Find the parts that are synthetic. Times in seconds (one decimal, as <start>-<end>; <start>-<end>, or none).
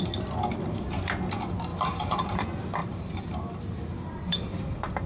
1.7-2.4; 2.8-4.5